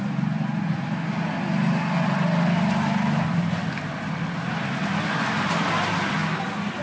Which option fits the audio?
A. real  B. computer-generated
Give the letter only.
A